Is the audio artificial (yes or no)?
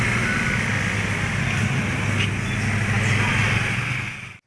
no